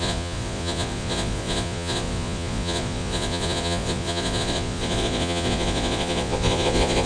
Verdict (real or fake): fake